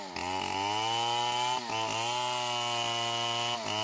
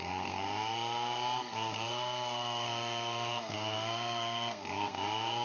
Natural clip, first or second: first